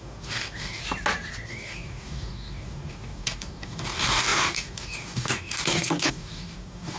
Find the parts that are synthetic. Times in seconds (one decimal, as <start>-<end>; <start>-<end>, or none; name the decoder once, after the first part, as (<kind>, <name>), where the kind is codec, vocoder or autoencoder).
0.0-0.8 (codec, DAC); 1.5-7.0